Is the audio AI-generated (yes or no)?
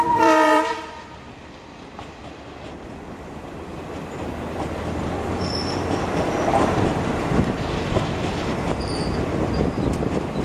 yes